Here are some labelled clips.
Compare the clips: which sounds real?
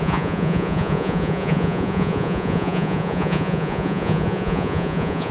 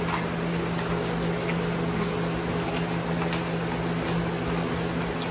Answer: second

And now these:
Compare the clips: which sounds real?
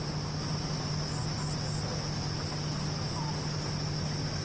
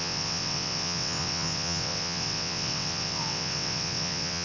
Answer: first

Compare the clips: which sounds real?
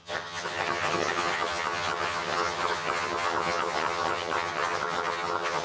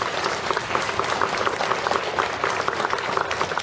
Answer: second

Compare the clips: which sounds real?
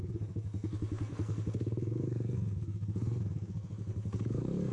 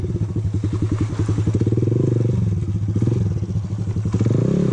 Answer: second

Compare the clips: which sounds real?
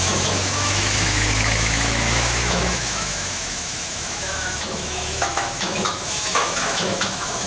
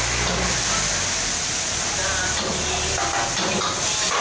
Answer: second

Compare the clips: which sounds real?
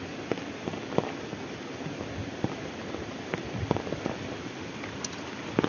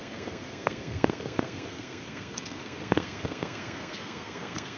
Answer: first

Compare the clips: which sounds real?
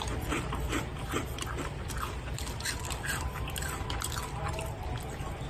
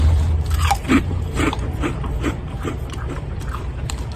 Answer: first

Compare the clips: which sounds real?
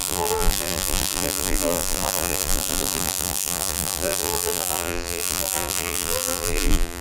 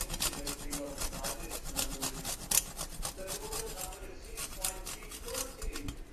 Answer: second